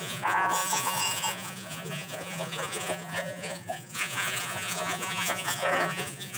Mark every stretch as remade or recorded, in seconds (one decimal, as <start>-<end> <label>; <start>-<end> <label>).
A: 0.0-6.4 remade